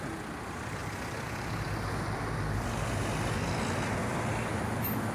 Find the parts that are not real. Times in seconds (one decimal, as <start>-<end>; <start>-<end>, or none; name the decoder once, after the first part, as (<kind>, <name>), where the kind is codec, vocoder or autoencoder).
0.8-2.3 (vocoder, BigVGAN v2)